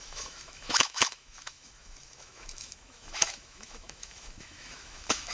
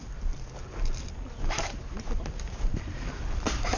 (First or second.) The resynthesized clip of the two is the first